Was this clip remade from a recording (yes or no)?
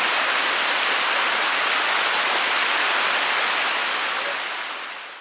no